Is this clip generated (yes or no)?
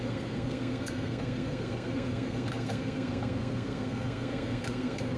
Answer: yes